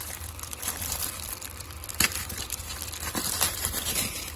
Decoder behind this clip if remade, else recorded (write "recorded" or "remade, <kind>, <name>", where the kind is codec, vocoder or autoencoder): remade, vocoder, BigVGAN v2